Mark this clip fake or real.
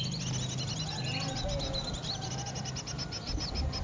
real